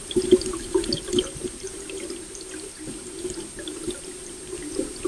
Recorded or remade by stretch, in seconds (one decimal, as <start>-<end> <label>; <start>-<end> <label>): 0.0-5.1 recorded